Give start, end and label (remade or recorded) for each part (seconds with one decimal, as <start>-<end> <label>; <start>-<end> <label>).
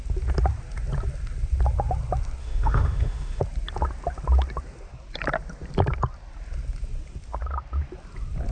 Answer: 0.0-2.4 recorded; 2.4-3.4 remade; 3.4-8.5 recorded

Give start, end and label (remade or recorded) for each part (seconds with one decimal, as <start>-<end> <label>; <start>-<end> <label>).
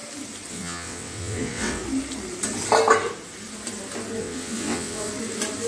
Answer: 0.0-0.5 recorded; 0.5-1.8 remade; 1.8-4.2 recorded; 4.2-5.1 remade; 5.1-5.7 recorded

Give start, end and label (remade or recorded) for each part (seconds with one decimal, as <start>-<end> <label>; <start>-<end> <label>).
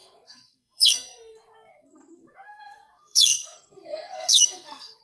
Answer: 0.0-5.0 remade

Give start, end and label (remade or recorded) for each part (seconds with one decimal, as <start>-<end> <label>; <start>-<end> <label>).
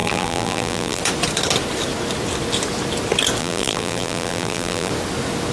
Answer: 0.0-1.0 remade; 1.0-3.4 recorded; 3.4-4.9 remade; 4.9-5.5 recorded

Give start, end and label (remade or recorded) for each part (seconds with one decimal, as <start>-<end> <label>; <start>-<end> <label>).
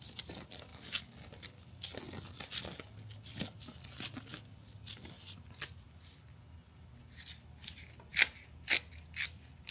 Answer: 0.0-9.7 recorded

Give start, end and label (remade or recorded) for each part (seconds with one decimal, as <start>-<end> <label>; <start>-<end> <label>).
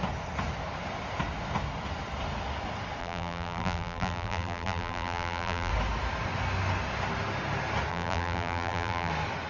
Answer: 0.0-3.0 recorded; 3.0-5.7 remade; 5.7-7.9 recorded; 7.9-9.1 remade; 9.1-9.5 recorded